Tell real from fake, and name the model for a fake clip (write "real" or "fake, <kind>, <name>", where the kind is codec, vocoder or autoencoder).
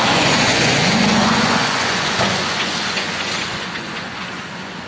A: fake, vocoder, Vocos